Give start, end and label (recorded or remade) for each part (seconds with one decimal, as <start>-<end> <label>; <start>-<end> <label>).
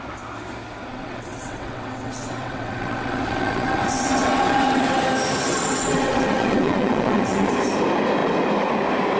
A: 0.0-0.9 recorded; 0.9-5.0 remade; 5.0-5.5 recorded; 5.5-7.5 remade; 7.5-9.2 recorded